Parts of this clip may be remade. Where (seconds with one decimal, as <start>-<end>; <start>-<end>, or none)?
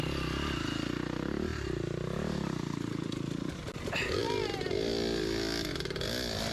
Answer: none